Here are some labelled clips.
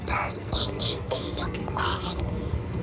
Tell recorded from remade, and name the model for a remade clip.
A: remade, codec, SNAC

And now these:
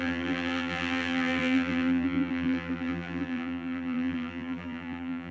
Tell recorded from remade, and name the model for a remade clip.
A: remade, vocoder, BigVGAN v2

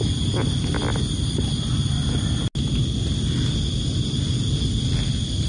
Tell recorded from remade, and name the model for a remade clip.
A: recorded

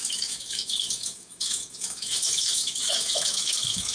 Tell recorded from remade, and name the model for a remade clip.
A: remade, autoencoder, DAC-VAE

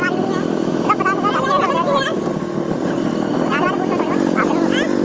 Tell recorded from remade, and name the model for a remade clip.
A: recorded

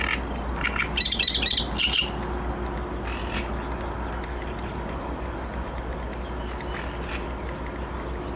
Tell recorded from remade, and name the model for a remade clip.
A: recorded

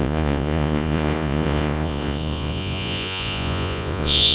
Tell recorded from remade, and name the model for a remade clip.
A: remade, vocoder, Vocos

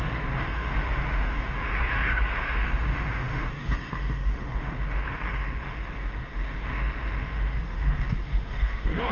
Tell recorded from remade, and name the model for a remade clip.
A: remade, autoencoder, DAC-VAE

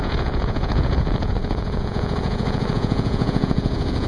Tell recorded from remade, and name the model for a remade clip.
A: remade, vocoder, Vocos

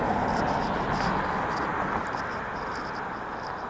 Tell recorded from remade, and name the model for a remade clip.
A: recorded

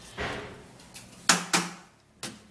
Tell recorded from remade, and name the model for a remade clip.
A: recorded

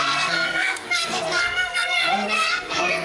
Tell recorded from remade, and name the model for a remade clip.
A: remade, codec, SNAC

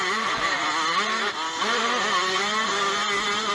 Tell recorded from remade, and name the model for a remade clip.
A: recorded